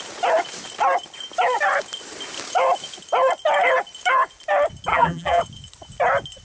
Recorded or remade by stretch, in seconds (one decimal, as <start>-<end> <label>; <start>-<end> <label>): 0.0-4.9 recorded; 4.9-5.4 remade; 5.4-6.4 recorded